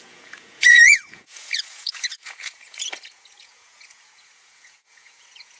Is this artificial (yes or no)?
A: yes